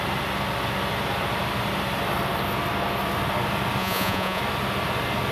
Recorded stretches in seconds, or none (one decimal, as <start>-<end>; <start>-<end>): 0.0-3.8; 4.4-5.3